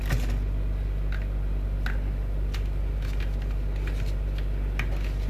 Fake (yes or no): no